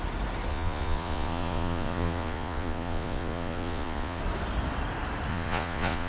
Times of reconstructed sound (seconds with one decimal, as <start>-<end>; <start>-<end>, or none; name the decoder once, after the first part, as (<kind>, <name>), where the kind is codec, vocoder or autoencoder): 0.5-4.2 (vocoder, Vocos); 5.3-6.1